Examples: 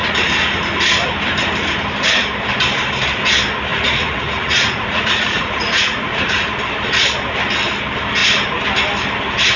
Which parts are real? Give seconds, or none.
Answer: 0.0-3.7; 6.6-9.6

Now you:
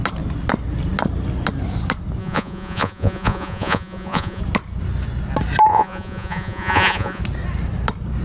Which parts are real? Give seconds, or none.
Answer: 0.0-2.2; 4.4-5.7; 7.2-8.2

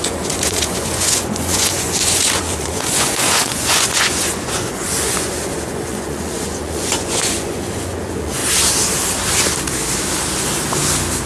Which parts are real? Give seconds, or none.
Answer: 8.4-11.3

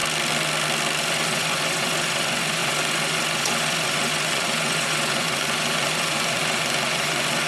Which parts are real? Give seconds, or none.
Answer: 0.0-1.0

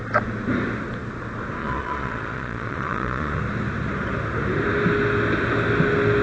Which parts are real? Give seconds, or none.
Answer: 0.0-1.6; 3.4-6.2

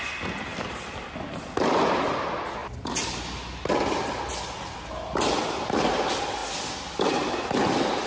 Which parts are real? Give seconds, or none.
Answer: 0.0-8.1

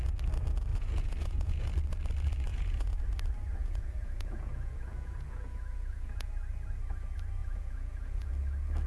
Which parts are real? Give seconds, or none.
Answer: 0.0-0.7; 1.7-2.5; 3.0-3.6; 6.3-7.4; 8.3-8.9

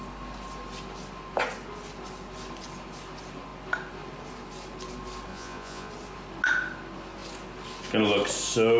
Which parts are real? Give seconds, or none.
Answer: 0.0-5.3; 5.9-8.8